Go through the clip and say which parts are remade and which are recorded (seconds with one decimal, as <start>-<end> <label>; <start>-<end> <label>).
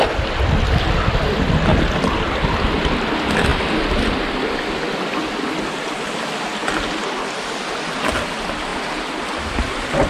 0.0-10.1 recorded